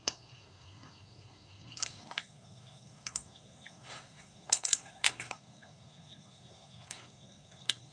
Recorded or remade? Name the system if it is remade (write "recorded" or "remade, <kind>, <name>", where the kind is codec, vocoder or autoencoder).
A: remade, codec, SNAC